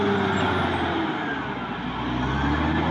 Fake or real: real